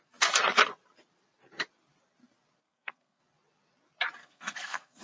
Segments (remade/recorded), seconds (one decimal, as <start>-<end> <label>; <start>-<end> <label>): 0.0-2.6 recorded; 2.6-3.2 remade; 3.2-4.2 recorded; 4.2-5.0 remade